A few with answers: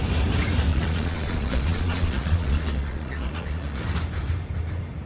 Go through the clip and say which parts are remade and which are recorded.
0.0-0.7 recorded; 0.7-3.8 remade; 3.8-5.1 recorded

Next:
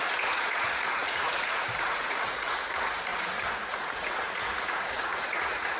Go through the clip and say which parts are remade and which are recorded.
0.0-5.8 remade